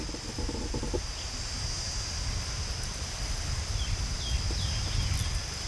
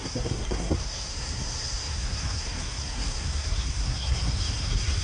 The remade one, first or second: second